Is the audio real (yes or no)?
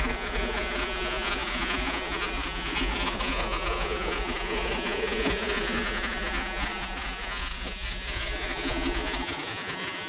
no